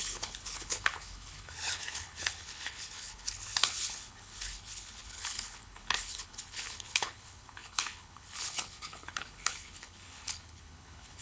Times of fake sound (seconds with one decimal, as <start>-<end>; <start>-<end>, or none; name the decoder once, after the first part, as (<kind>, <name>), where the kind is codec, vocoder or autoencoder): 0.0-11.2 (codec, HILCodec)